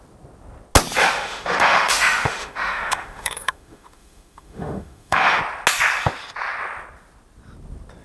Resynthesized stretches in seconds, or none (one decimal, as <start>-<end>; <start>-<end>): 1.0-5.4